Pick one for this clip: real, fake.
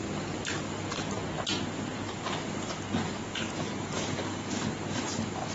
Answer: real